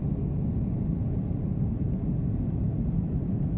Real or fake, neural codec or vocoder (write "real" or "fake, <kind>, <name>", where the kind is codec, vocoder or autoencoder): real